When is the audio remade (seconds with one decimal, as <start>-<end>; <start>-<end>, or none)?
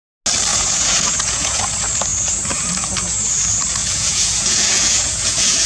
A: 0.5-1.6; 3.8-5.7